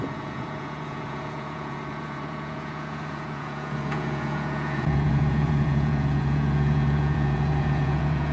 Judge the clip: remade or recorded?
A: remade